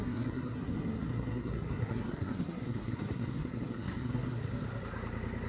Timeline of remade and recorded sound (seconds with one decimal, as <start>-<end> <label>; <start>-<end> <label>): 0.0-4.5 remade; 4.5-5.5 recorded